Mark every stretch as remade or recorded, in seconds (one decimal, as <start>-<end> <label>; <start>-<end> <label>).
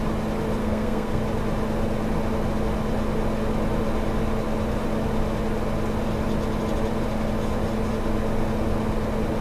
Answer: 0.0-0.6 recorded; 0.6-1.2 remade; 1.2-9.4 recorded